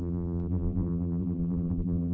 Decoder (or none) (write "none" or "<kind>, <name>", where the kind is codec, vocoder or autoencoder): vocoder, BigVGAN v2